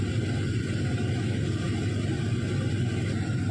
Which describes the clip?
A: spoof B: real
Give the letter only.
A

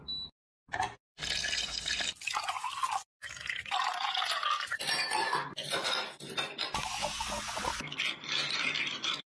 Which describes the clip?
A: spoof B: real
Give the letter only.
B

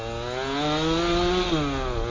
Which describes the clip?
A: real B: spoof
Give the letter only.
A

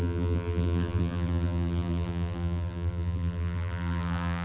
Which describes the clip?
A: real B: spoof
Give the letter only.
B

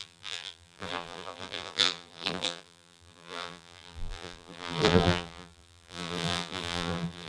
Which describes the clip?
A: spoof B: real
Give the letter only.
A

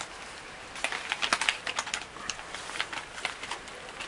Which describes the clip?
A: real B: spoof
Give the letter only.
A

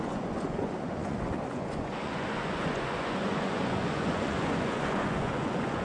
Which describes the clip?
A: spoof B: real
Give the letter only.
A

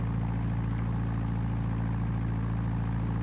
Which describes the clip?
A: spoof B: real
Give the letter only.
A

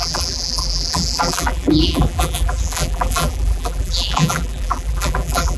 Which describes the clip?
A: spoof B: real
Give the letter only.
A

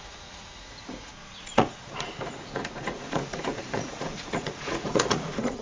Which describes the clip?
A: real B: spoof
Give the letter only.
B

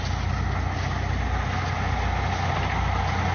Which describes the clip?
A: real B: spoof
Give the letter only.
A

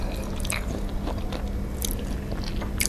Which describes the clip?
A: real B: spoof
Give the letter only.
A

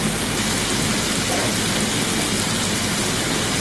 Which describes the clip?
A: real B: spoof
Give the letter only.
A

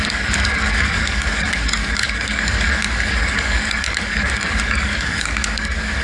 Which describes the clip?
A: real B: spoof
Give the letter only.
B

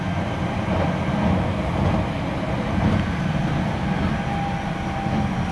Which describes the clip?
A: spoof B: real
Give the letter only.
B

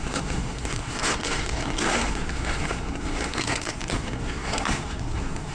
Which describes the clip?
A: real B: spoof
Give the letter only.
B